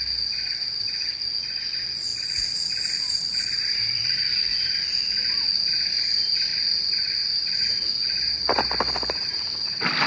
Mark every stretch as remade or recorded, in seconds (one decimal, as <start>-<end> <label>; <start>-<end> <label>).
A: 0.0-2.1 recorded; 2.1-4.7 remade; 4.7-10.1 recorded